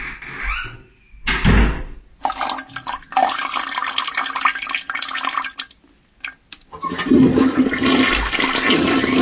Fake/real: real